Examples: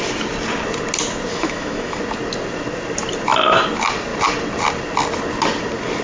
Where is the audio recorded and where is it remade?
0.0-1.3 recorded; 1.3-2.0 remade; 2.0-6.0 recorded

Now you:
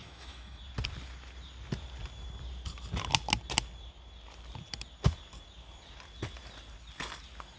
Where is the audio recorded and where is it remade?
0.0-0.6 remade; 0.6-7.6 recorded

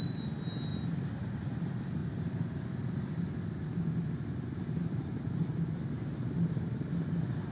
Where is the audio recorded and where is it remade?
0.0-7.5 recorded

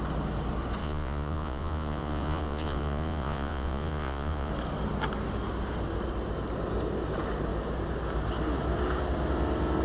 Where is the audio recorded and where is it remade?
0.0-0.8 recorded; 0.8-4.5 remade; 4.5-9.8 recorded

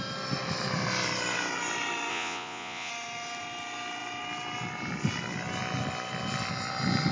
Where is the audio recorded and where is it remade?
0.0-2.1 recorded; 2.1-2.9 remade; 2.9-7.1 recorded

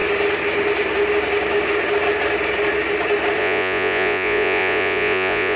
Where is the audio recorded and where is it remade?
0.0-3.4 recorded; 3.4-5.6 remade

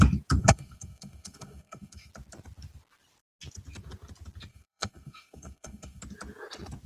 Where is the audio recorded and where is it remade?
0.0-0.4 recorded; 0.4-2.1 remade; 2.1-4.5 recorded; 4.5-6.0 remade; 6.0-6.9 recorded

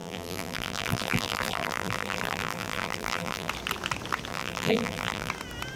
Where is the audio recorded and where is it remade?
0.0-3.5 remade; 3.5-4.3 recorded; 4.3-5.3 remade; 5.3-5.8 recorded